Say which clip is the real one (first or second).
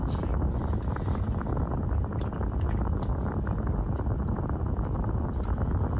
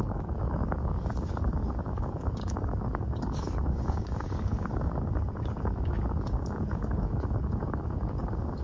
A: first